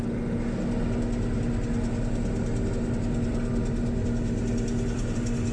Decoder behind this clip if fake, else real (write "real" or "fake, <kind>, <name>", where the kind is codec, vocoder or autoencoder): real